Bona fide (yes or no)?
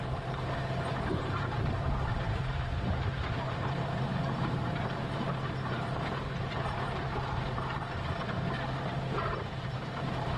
no